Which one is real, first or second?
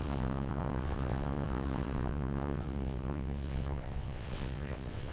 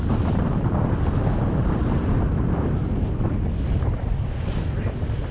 second